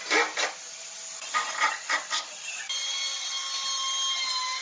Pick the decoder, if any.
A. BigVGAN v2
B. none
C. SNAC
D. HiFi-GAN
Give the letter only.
B